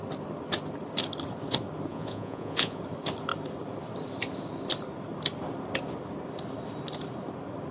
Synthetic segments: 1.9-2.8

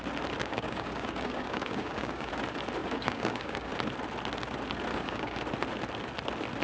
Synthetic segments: 0.4-2.3; 2.8-3.7; 4.9-5.4